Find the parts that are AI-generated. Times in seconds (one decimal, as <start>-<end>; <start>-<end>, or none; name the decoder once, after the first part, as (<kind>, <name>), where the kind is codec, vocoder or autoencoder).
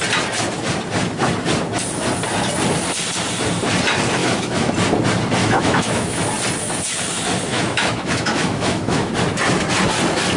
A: 4.2-4.7 (autoencoder, DAC-VAE); 5.4-6.2; 7.5-9.1